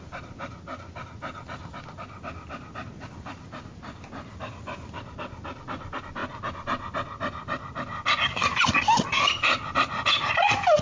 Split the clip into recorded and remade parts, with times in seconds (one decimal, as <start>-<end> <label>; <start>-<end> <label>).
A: 0.0-10.8 recorded